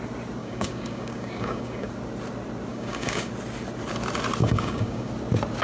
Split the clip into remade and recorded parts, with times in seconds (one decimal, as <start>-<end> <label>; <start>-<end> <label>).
0.0-0.4 recorded; 0.4-1.9 remade; 1.9-2.7 recorded; 2.7-3.3 remade; 3.3-4.4 recorded; 4.4-5.1 remade; 5.1-5.6 recorded